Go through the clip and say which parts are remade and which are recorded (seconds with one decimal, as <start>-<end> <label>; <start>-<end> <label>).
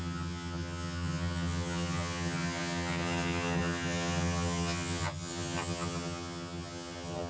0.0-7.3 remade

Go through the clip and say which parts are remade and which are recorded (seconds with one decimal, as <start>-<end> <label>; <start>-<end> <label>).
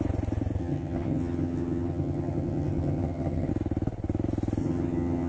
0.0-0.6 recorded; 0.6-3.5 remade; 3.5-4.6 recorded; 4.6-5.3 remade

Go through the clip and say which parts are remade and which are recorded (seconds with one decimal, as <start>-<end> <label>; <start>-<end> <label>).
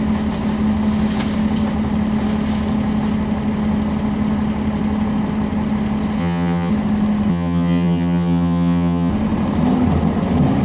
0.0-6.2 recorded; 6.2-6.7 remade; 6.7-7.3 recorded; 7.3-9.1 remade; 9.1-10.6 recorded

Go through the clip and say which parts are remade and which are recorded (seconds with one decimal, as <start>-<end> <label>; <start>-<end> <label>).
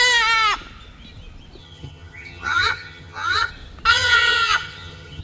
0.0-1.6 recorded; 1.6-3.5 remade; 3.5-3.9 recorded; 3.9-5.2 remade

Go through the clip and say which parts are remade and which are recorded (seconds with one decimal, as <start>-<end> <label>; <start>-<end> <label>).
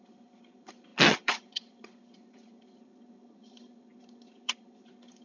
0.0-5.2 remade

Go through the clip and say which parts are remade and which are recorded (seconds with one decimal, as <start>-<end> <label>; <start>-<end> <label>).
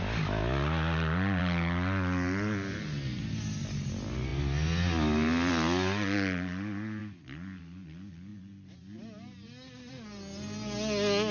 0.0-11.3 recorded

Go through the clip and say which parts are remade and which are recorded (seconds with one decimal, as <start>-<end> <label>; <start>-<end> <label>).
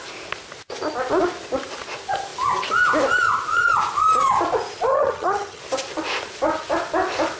0.0-4.9 recorded; 4.9-5.6 remade; 5.6-7.4 recorded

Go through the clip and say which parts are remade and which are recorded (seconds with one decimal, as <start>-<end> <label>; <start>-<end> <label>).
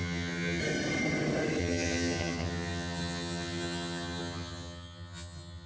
0.0-0.6 remade; 0.6-1.6 recorded; 1.6-5.7 remade